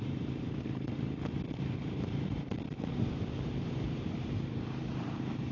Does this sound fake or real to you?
fake